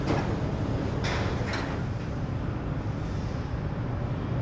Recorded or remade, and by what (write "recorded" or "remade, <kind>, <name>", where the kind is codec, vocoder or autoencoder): recorded